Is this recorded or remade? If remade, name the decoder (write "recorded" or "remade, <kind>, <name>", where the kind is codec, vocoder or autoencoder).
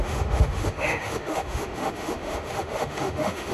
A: remade, autoencoder, DAC-VAE